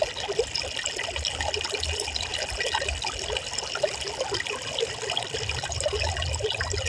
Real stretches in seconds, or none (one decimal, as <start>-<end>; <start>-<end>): 0.0-6.9